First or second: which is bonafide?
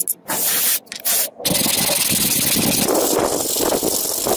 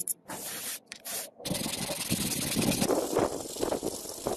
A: first